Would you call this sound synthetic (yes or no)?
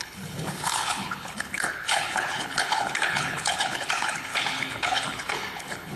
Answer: yes